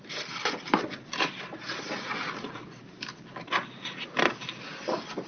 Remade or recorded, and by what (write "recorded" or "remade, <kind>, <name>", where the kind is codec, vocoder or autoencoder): recorded